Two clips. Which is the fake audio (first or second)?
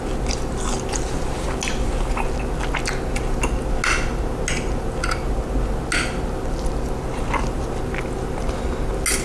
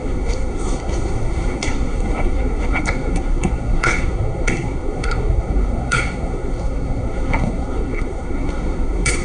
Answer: second